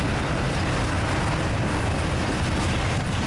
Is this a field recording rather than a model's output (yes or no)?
yes